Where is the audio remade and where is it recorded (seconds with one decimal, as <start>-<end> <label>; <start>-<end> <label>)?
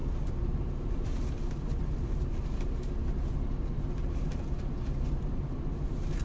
0.0-6.2 remade